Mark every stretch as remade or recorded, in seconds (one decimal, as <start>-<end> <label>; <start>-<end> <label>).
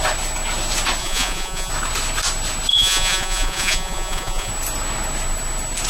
0.0-1.0 recorded; 1.0-1.7 remade; 1.7-2.7 recorded; 2.7-4.5 remade; 4.5-5.9 recorded